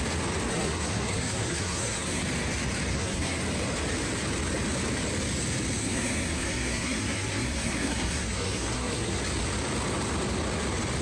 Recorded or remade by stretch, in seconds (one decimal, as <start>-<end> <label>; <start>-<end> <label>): 0.0-0.5 recorded; 0.5-2.2 remade; 2.2-2.9 recorded; 2.9-3.4 remade; 3.4-5.8 recorded; 5.8-9.2 remade; 9.2-11.0 recorded